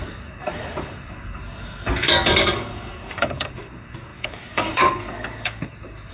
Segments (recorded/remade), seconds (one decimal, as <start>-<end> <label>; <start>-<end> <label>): 0.0-6.1 remade